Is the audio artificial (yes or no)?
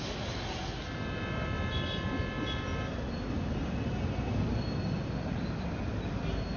no